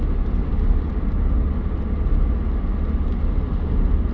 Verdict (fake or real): real